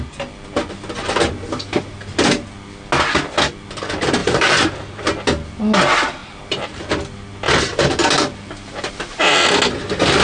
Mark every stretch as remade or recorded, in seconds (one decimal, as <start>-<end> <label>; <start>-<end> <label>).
0.0-4.2 recorded; 4.2-5.0 remade; 5.0-6.2 recorded; 6.2-6.9 remade; 6.9-8.0 recorded; 8.0-8.9 remade; 8.9-10.2 recorded